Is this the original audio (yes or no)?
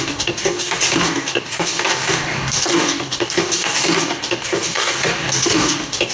no